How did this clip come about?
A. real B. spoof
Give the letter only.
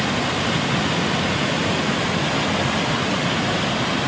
A